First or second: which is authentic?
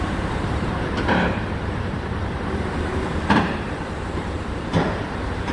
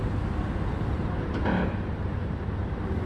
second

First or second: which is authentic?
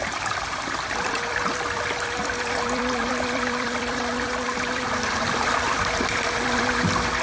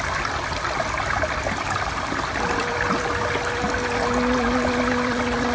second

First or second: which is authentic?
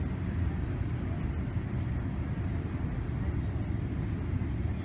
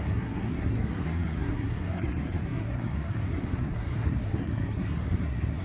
first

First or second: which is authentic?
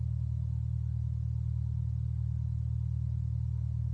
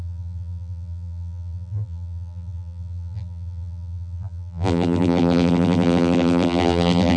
first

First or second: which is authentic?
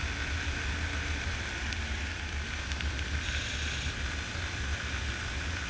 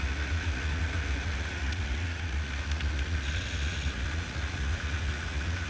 first